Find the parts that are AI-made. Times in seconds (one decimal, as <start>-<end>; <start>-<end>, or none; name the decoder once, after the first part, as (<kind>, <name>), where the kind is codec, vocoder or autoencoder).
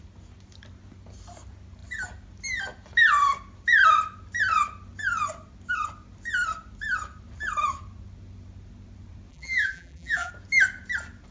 9.3-10.3 (vocoder, BigVGAN v2)